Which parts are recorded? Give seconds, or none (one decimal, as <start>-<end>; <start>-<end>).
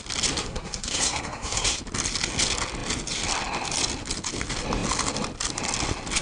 0.0-0.4; 1.8-6.2